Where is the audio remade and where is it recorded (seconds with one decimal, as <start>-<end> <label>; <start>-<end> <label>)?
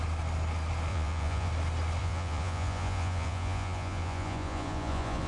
0.0-0.9 recorded; 0.9-1.5 remade; 1.5-2.0 recorded; 2.0-5.3 remade